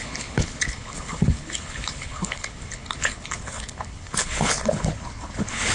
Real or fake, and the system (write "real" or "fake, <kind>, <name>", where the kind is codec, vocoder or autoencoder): fake, codec, HILCodec